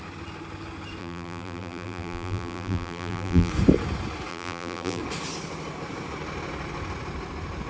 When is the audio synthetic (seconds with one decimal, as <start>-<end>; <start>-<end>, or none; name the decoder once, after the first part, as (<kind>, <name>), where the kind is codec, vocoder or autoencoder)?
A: 1.0-3.5 (vocoder, BigVGAN v2); 4.3-5.0